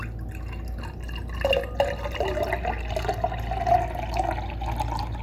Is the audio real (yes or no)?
yes